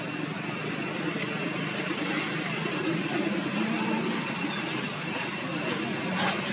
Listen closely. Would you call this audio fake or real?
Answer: real